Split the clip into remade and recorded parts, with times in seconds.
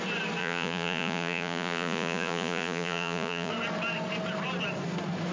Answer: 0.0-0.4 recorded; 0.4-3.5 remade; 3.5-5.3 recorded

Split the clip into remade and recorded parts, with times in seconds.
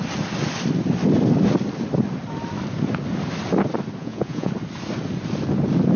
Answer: 0.0-4.0 recorded; 4.0-4.5 remade; 4.5-6.0 recorded